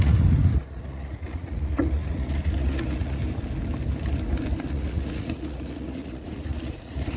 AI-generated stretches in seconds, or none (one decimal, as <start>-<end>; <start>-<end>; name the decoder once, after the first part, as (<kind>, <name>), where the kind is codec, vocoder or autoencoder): 0.0-3.2 (vocoder, Vocos); 4.7-7.2